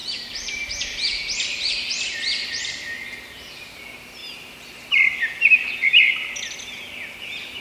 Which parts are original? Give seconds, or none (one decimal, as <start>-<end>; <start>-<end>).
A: 0.8-7.6